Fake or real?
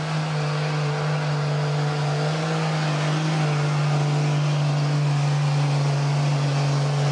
real